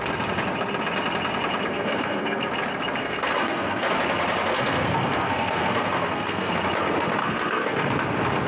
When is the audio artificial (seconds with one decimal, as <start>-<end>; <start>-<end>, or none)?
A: 1.7-2.5; 3.0-3.9; 4.5-6.5; 7.2-7.9